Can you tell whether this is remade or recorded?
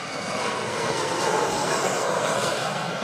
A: remade